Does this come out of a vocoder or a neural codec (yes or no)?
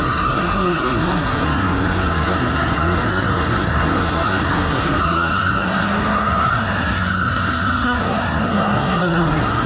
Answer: yes